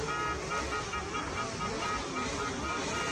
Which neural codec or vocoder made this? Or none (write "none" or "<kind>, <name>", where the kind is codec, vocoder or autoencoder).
none